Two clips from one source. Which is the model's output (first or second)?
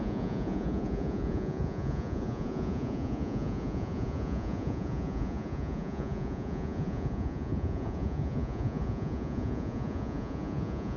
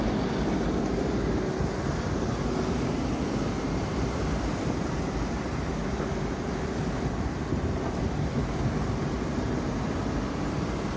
first